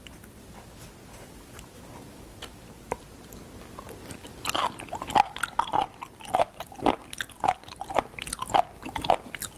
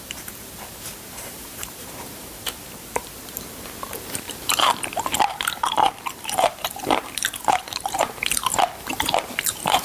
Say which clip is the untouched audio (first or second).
first